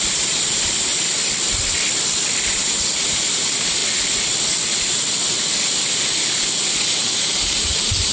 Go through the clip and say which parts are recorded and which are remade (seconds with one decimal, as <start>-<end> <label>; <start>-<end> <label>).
0.0-0.9 remade; 0.9-2.5 recorded; 2.5-3.8 remade; 3.8-6.9 recorded; 6.9-8.1 remade